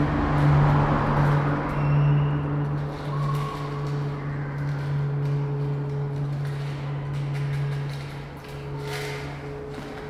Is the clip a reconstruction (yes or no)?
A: no